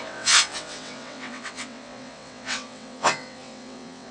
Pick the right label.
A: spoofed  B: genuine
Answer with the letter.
A